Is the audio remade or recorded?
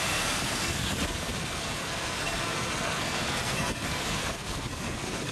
remade